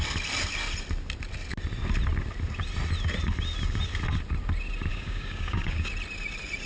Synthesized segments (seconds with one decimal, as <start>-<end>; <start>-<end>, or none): 4.9-5.9